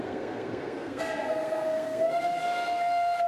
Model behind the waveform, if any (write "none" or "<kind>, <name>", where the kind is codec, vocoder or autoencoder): codec, SNAC